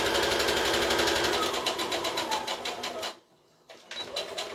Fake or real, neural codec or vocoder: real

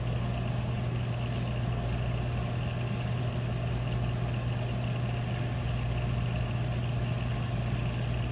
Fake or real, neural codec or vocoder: real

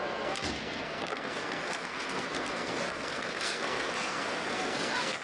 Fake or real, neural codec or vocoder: fake, codec, SNAC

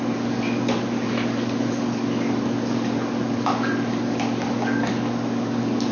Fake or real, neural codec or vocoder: fake, codec, DAC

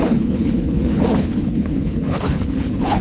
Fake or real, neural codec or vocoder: fake, codec, HILCodec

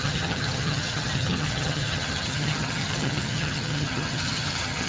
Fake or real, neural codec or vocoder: fake, vocoder, HiFi-GAN